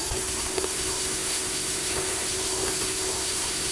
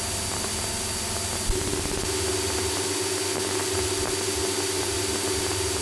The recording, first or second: second